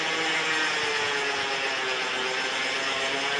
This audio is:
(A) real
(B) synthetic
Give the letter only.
A